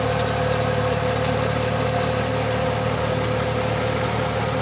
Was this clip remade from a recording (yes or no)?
no